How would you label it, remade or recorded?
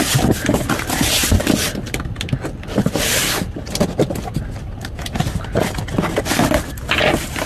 recorded